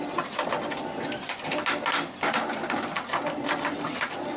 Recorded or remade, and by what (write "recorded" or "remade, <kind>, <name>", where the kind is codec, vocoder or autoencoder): recorded